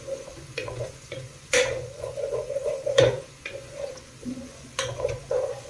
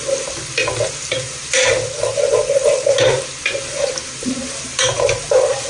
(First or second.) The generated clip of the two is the first